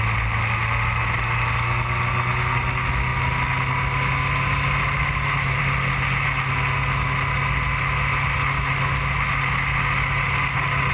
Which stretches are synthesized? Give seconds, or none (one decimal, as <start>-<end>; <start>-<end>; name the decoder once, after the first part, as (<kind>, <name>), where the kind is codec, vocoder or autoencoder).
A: none